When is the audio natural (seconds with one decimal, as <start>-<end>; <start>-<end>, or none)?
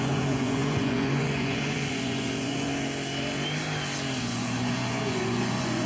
2.7-4.2